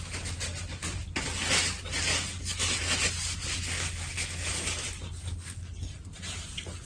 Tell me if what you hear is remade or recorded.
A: recorded